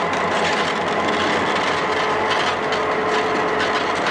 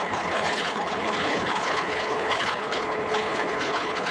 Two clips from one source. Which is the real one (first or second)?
first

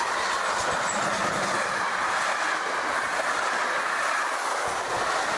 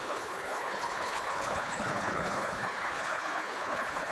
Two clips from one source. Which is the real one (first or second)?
first